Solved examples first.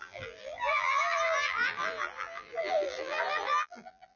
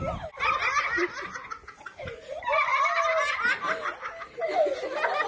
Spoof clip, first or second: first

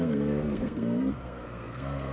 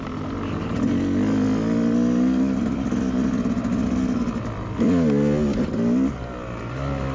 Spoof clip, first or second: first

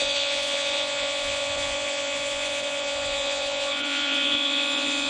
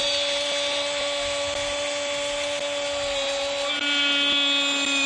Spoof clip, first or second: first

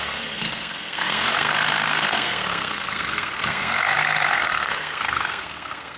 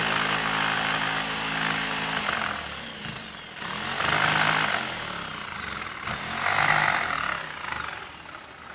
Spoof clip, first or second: first